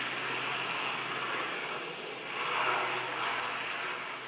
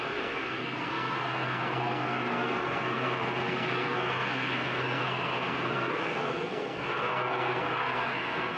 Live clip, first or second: first